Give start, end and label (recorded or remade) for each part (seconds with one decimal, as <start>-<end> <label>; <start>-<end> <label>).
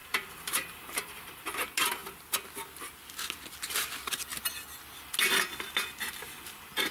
0.0-1.3 remade; 1.3-6.9 recorded